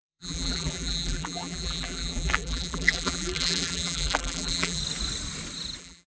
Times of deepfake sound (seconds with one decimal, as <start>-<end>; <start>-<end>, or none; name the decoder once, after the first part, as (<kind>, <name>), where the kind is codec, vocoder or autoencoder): 0.0-4.8 (vocoder, BigVGAN v2); 5.8-6.2

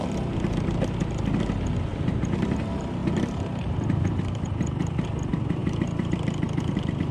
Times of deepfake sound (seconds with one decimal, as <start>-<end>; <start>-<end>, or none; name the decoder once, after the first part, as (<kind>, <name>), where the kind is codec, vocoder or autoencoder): 1.9-2.6 (vocoder, BigVGAN v2); 3.0-4.6; 5.6-7.1

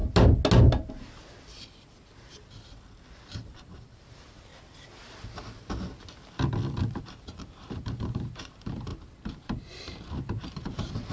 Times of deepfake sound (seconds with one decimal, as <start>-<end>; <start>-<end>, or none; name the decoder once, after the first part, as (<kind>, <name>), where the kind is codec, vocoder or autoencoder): 3.1-4.5 (vocoder, BigVGAN v2); 7.0-11.1

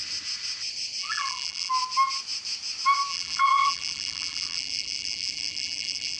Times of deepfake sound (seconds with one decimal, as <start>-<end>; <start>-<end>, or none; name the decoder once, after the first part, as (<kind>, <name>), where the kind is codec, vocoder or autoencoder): 1.0-1.7 (vocoder, BigVGAN v2); 3.1-6.2

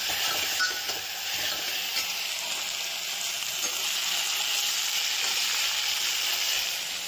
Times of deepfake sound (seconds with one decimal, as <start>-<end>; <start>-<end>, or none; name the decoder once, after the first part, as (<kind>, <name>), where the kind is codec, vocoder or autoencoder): none